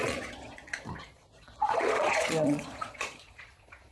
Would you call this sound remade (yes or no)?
yes